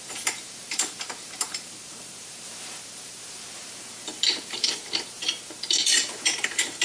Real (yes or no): no